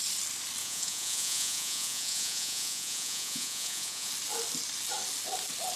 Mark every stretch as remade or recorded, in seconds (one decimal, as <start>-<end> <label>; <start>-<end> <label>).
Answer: 0.0-0.6 recorded; 0.6-4.1 remade; 4.1-5.8 recorded